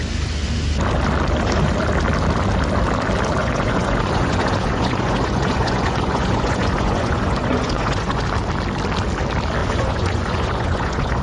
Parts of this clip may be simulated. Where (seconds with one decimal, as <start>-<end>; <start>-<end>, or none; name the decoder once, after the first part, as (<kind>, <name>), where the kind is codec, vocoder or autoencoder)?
3.4-8.2 (vocoder, Vocos); 9.6-11.2